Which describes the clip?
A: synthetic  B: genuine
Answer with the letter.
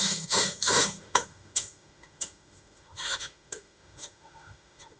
A